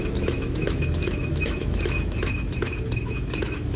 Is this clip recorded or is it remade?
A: remade